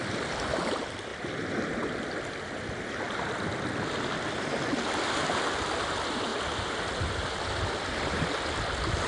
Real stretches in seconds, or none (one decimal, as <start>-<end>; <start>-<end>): 0.0-9.1